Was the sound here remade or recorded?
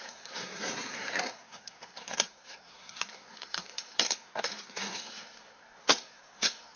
remade